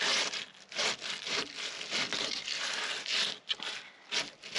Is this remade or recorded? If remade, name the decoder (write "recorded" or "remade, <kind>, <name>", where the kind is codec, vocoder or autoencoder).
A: recorded